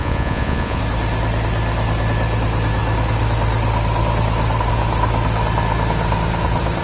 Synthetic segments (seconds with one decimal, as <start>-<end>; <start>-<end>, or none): 0.0-0.8